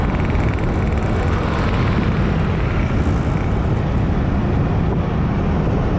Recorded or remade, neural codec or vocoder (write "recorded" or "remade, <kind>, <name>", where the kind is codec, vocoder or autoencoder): recorded